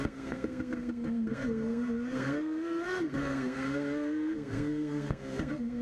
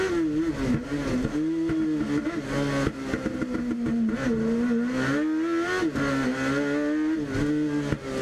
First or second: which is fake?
first